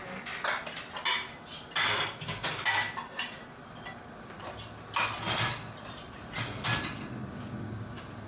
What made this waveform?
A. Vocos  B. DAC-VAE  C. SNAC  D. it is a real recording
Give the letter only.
D